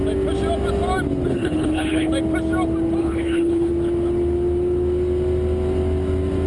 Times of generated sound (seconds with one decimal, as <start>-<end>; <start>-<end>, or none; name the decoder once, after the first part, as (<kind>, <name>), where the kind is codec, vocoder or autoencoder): 1.3-2.1 (codec, HILCodec); 3.0-3.7